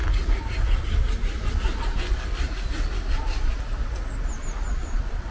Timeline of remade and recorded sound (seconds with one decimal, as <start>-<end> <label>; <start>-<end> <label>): 0.0-4.8 recorded; 4.8-5.3 remade